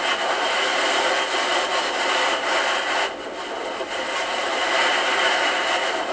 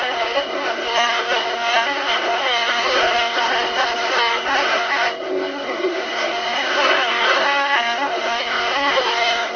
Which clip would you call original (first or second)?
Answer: first